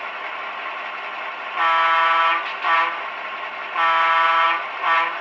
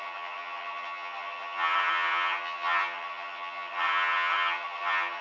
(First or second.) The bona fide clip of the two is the first